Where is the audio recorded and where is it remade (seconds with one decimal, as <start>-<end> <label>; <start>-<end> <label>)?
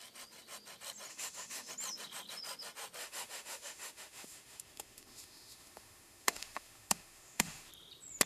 0.0-1.1 recorded; 1.1-1.7 remade; 1.7-3.0 recorded; 3.0-7.7 remade; 7.7-8.3 recorded